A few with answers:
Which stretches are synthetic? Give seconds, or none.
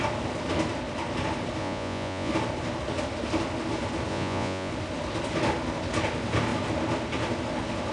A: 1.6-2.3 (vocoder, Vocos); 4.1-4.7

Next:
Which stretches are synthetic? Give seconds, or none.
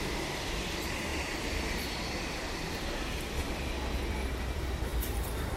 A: 0.0-5.6 (vocoder, BigVGAN v2)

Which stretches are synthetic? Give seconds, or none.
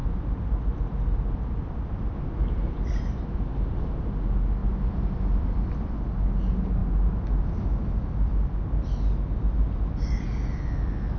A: 0.0-3.0 (vocoder, BigVGAN v2); 4.6-6.0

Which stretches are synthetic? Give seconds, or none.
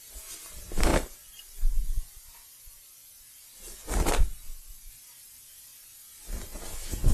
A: 0.9-4.9 (vocoder, BigVGAN v2); 5.7-6.6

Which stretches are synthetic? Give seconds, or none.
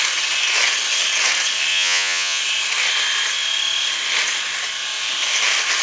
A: 1.7-2.4 (vocoder, Vocos)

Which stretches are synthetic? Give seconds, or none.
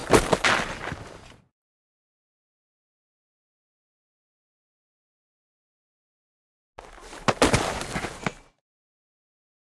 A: none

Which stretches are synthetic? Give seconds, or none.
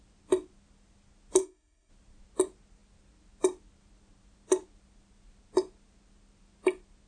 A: 1.4-1.9 (codec, SNAC)